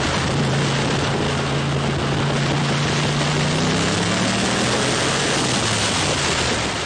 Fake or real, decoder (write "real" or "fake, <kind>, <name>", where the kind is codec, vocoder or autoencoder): real